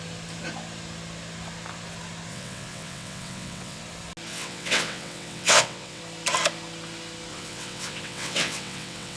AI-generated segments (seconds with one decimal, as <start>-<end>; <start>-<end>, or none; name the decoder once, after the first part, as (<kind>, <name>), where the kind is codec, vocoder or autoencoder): 2.3-3.8 (vocoder, WaveNeXt); 4.3-6.0; 7.3-9.2

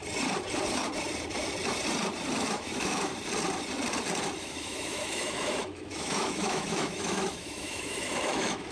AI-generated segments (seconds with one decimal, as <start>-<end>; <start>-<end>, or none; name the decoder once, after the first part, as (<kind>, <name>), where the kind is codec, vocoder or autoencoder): 2.4-3.1 (autoencoder, DAC-VAE); 4.4-8.7

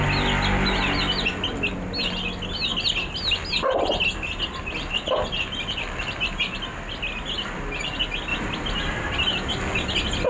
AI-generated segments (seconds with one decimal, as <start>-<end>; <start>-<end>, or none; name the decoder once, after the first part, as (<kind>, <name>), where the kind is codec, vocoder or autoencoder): none

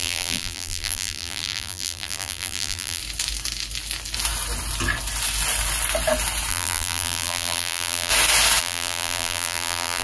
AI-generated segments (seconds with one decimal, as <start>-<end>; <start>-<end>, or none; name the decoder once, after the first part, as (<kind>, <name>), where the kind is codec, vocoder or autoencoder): 0.0-3.0 (vocoder, BigVGAN v2); 6.5-8.1; 8.6-10.0

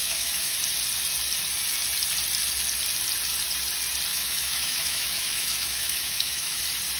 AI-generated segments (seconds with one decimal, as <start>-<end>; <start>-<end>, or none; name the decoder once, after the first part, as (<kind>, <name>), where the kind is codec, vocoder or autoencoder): 0.0-0.6 (autoencoder, DAC-VAE); 4.1-6.6

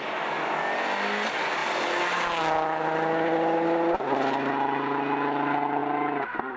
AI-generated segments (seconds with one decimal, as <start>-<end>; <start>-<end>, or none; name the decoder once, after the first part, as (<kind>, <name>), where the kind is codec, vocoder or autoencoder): none